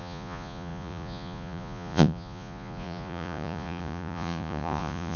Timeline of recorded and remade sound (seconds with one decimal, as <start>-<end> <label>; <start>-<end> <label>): 0.0-5.2 remade